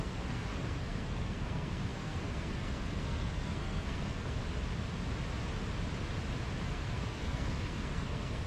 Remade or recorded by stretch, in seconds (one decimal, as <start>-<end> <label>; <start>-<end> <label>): 0.0-4.4 remade; 4.4-6.6 recorded; 6.6-8.5 remade